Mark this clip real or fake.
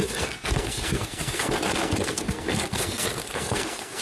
fake